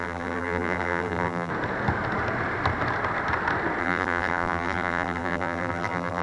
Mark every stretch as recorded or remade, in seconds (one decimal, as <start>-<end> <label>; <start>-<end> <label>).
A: 0.0-1.5 remade; 1.5-3.8 recorded; 3.8-6.2 remade